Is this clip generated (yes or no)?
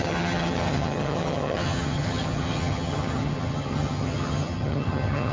yes